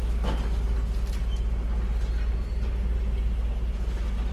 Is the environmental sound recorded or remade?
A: recorded